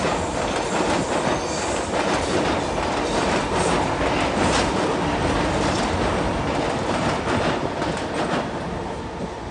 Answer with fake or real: real